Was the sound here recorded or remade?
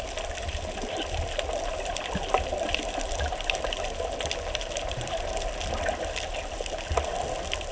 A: recorded